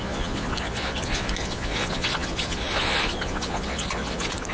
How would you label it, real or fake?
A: fake